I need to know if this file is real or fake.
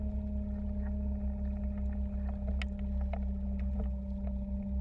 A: real